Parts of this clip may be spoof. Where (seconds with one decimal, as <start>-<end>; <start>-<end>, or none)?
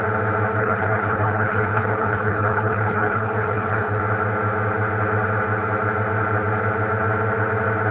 0.6-4.0